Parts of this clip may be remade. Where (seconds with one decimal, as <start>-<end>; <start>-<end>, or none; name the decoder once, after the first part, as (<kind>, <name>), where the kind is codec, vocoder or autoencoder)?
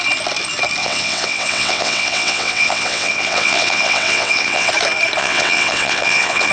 0.8-4.7 (vocoder, WaveNeXt); 5.2-6.5